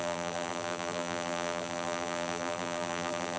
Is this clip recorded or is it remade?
remade